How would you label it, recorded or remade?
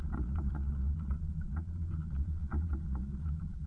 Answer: remade